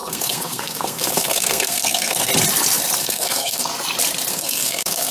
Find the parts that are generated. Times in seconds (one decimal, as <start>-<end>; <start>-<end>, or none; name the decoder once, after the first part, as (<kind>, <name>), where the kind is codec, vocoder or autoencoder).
0.0-2.3 (codec, SNAC); 3.0-3.7; 4.3-5.1

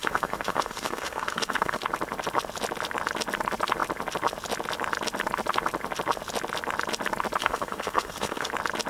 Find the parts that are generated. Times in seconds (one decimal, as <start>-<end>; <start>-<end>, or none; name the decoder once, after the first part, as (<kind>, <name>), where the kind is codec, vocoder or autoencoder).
0.0-1.8 (codec, SNAC); 7.4-8.5

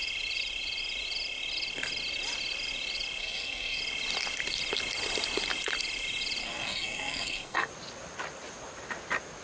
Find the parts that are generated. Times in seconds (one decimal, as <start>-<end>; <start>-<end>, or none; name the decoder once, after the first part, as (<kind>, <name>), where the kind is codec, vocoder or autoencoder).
3.2-3.8 (codec, SNAC); 6.4-7.7

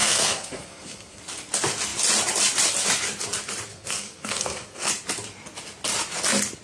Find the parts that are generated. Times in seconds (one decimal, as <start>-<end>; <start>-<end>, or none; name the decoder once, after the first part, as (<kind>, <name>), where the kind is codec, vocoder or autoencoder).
0.0-1.2 (codec, SNAC); 3.7-4.9

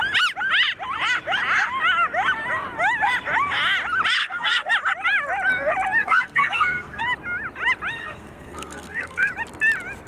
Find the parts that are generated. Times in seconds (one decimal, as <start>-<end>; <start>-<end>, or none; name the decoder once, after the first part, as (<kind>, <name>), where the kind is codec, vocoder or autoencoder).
4.2-4.7 (codec, SNAC); 6.0-7.0; 8.0-9.3

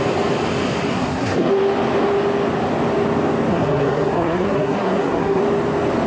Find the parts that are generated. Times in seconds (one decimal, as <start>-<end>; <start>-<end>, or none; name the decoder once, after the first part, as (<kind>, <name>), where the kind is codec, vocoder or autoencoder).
0.9-1.5 (codec, SNAC); 3.5-5.4